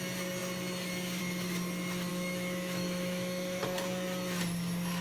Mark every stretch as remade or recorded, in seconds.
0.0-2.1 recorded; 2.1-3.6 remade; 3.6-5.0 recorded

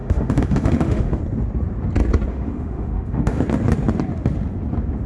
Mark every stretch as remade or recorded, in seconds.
0.0-1.2 remade; 1.2-2.3 recorded; 2.3-3.4 remade; 3.4-5.1 recorded

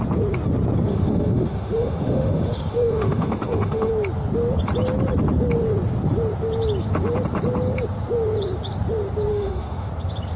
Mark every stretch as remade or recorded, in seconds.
0.0-0.9 recorded; 0.9-3.9 remade; 3.9-9.3 recorded; 9.3-9.9 remade; 9.9-10.4 recorded

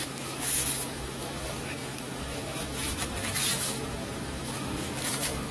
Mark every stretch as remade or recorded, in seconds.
0.0-5.5 remade